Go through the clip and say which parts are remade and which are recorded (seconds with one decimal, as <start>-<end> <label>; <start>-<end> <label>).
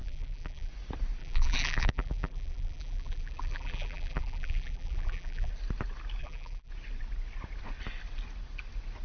0.0-0.7 remade; 0.7-1.2 recorded; 1.2-5.5 remade; 5.5-6.2 recorded; 6.2-6.7 remade; 6.7-9.0 recorded